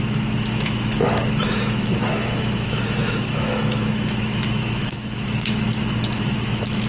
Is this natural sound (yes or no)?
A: no